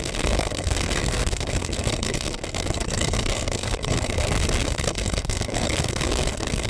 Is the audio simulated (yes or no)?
yes